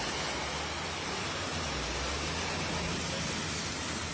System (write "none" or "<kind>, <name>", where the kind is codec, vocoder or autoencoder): none